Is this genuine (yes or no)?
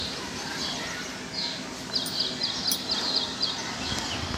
yes